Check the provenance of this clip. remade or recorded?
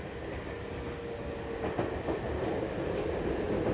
recorded